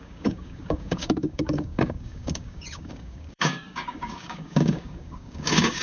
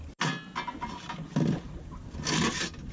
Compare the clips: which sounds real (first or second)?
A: second